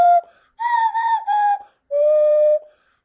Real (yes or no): no